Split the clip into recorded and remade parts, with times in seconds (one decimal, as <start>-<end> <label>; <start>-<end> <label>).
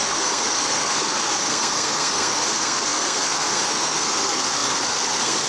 0.0-5.5 remade